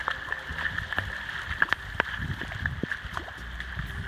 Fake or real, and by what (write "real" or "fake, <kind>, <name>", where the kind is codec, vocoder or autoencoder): real